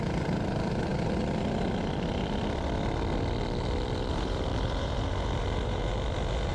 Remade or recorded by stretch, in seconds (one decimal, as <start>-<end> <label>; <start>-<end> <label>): 0.0-0.9 remade; 0.9-4.1 recorded; 4.1-5.9 remade; 5.9-6.5 recorded